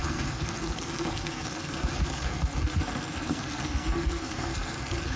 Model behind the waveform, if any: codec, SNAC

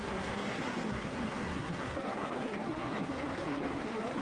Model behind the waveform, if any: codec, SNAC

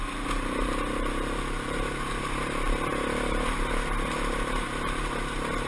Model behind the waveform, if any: none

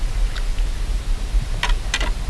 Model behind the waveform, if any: none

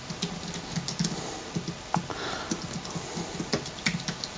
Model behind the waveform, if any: none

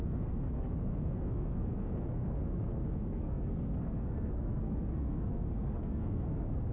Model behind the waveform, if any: codec, SNAC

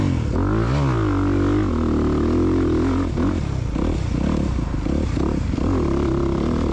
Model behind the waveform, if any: none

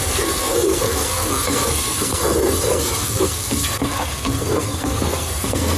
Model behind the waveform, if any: codec, SNAC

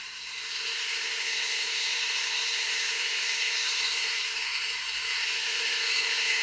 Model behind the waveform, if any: codec, SNAC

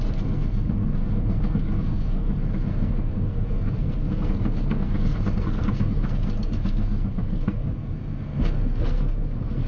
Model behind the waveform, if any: codec, SNAC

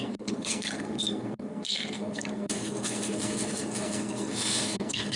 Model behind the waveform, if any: codec, SNAC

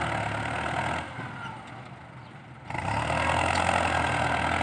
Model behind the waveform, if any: none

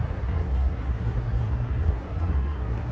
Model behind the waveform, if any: codec, SNAC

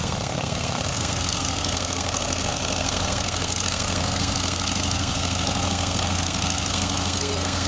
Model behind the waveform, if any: codec, SNAC